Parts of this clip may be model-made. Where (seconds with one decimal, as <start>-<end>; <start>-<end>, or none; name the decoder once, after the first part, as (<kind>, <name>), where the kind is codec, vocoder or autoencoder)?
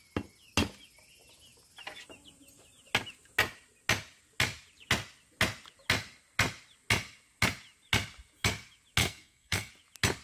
9.0-9.7 (codec, SNAC)